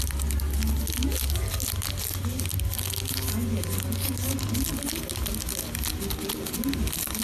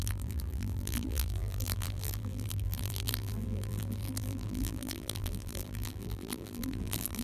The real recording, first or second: first